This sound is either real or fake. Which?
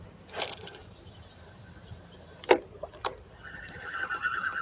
fake